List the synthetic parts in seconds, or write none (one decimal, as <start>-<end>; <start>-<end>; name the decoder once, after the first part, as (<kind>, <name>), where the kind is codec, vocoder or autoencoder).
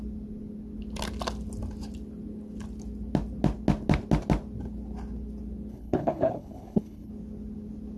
5.7-7.1 (codec, HILCodec)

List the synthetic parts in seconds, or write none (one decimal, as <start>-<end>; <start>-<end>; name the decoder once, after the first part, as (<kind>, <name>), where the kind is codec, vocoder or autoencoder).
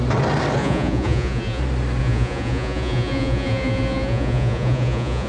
0.6-1.6 (vocoder, Vocos); 2.0-5.3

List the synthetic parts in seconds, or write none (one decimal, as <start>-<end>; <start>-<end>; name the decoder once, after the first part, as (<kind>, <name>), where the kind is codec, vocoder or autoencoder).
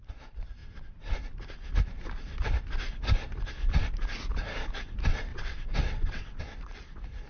5.3-6.4 (vocoder, WaveNeXt)